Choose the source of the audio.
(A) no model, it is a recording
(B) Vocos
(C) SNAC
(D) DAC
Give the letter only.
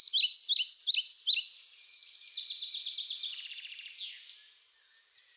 A